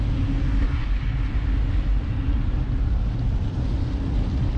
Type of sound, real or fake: real